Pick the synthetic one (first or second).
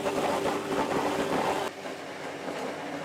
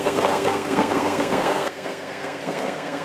second